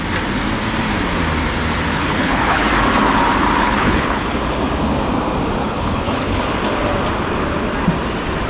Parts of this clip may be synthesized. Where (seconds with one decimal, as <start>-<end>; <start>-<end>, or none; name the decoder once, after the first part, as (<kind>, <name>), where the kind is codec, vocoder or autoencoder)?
1.9-2.7 (codec, HILCodec); 3.6-4.4; 5.6-6.4